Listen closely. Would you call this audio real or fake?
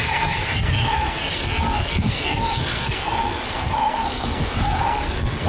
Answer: fake